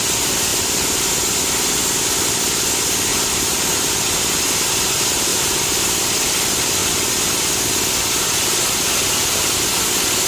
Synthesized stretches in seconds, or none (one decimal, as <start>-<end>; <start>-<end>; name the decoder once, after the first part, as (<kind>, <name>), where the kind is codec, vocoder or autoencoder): 3.1-3.9 (vocoder, BigVGAN v2); 5.3-6.0